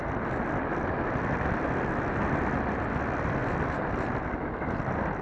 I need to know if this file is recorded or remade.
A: recorded